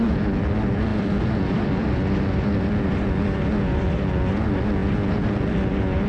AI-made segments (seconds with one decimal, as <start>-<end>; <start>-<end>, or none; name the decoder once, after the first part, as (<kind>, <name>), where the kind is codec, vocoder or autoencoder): 0.9-3.9 (vocoder, BigVGAN v2)